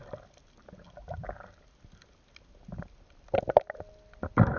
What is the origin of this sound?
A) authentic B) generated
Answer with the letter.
A